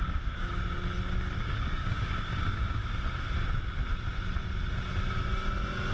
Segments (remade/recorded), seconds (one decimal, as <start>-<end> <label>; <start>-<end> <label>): 0.0-0.6 remade; 0.6-1.4 recorded; 1.4-2.8 remade; 2.8-5.9 recorded